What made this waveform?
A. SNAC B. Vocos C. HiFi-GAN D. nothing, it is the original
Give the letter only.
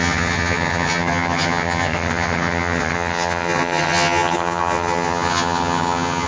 C